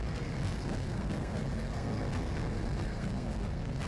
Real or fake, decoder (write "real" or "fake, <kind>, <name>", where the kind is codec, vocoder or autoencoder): fake, codec, SNAC